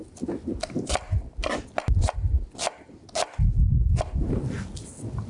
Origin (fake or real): real